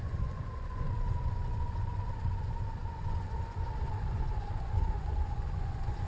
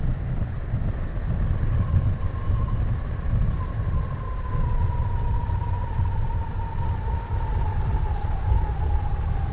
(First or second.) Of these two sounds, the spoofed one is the first